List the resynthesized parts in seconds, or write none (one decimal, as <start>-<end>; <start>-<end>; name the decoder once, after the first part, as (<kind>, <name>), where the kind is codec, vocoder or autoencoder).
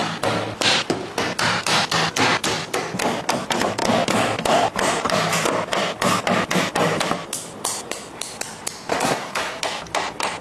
8.9-9.6 (codec, SNAC)